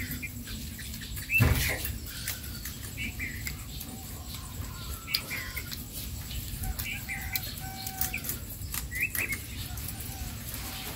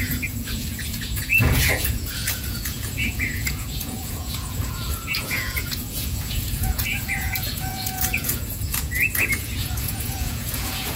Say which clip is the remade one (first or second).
second